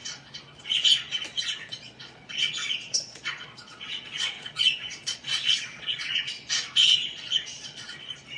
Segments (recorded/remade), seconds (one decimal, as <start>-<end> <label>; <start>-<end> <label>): 0.0-1.3 recorded; 1.3-6.1 remade; 6.1-6.8 recorded; 6.8-7.9 remade; 7.9-8.4 recorded